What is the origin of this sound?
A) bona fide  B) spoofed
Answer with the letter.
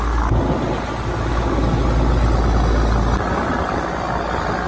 A